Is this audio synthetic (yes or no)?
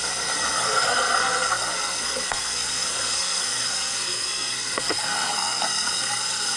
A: yes